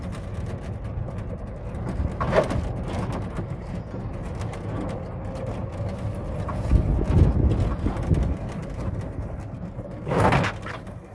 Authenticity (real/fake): real